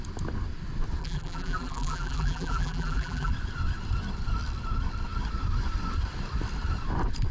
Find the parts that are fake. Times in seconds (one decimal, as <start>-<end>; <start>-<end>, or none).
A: 1.0-3.3